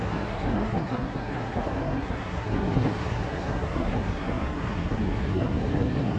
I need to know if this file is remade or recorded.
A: remade